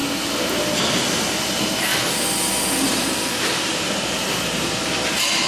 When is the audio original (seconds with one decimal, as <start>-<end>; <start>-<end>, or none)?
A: 0.0-1.4; 1.9-3.6